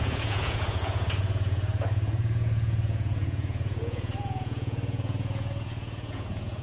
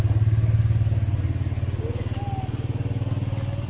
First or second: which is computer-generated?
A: first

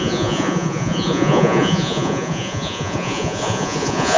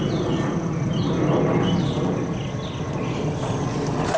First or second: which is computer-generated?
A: first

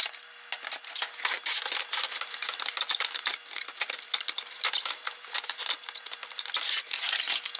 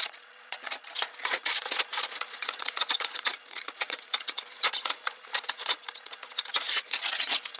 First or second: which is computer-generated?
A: second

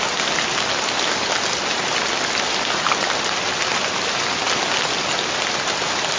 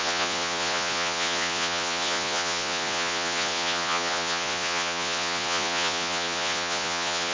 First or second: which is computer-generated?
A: second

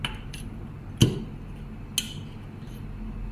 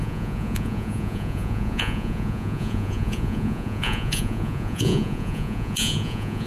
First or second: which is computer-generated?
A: second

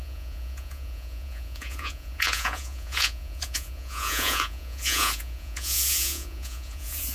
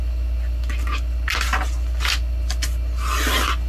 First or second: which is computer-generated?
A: first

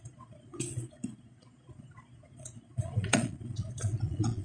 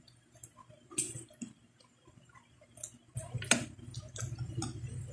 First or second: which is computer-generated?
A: first